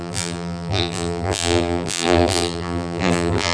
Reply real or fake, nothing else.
fake